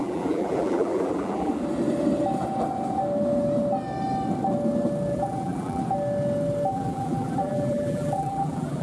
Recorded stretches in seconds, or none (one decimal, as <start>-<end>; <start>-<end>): 1.5-5.1; 5.8-6.7